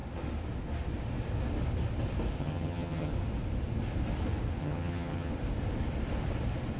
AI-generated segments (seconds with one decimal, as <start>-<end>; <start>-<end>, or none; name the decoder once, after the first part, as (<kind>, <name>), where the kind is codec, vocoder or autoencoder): 2.4-3.1 (vocoder, HiFi-GAN); 4.6-5.3